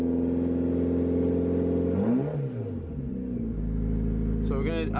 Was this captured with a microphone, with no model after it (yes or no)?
yes